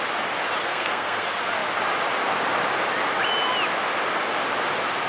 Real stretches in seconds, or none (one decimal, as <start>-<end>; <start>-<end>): 0.0-0.7; 1.2-5.1